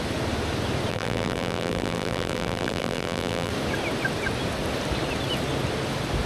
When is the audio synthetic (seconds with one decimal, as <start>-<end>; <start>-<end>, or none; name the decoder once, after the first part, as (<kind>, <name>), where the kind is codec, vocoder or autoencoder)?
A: 0.9-3.5 (vocoder, BigVGAN v2)